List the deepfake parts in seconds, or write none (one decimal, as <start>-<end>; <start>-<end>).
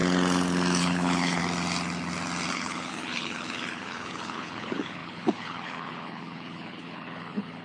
0.8-1.4; 2.5-7.6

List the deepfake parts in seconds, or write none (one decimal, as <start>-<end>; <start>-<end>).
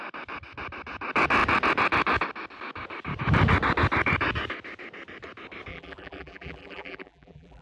5.7-7.6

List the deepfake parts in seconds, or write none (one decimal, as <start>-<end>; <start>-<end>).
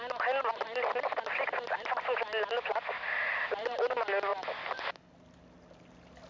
none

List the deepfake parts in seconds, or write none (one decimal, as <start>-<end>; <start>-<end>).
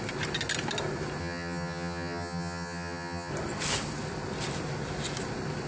1.2-3.3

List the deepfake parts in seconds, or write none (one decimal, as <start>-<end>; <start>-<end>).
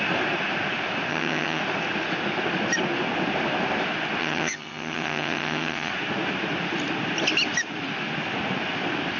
1.1-1.6; 4.2-5.9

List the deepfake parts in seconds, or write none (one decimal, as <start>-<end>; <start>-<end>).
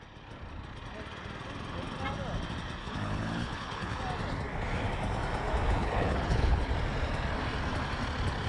2.8-4.0; 5.8-6.7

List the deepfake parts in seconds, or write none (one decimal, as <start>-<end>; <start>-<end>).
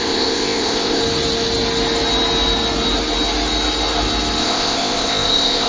0.0-1.0; 4.4-5.7